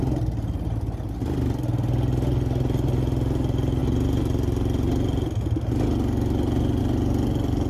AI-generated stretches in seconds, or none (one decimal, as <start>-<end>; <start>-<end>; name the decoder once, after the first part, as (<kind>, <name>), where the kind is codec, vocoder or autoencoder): none